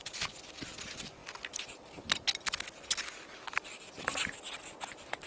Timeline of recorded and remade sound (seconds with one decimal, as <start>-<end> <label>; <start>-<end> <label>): 0.0-5.3 recorded